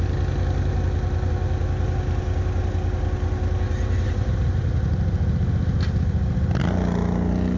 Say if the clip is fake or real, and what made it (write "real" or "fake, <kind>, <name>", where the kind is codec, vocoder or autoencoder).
real